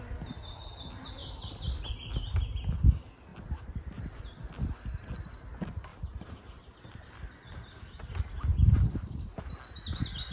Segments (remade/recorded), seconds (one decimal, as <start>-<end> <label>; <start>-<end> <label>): 0.0-1.2 recorded; 1.2-1.9 remade; 1.9-3.3 recorded; 3.3-4.2 remade; 4.2-5.9 recorded; 5.9-7.1 remade; 7.1-8.5 recorded; 8.5-9.4 remade; 9.4-10.3 recorded